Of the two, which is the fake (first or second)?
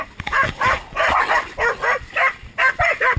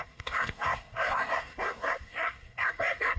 second